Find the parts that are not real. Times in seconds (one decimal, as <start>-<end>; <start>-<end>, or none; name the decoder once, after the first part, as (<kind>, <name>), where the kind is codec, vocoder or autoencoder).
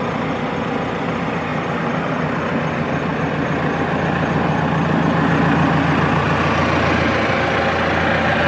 none